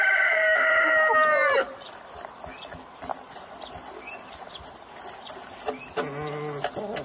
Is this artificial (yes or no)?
yes